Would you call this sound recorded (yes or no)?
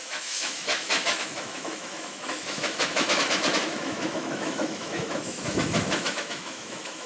no